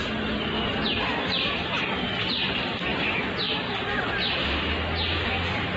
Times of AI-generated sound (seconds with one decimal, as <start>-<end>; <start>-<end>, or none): none